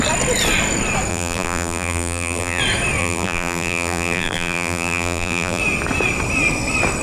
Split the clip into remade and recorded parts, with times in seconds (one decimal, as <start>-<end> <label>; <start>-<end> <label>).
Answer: 0.0-1.1 recorded; 1.1-2.6 remade; 2.6-3.0 recorded; 3.0-5.6 remade; 5.6-7.0 recorded